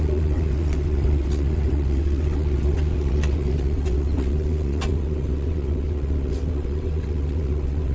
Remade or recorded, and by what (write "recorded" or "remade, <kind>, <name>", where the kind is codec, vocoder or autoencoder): remade, vocoder, WaveNeXt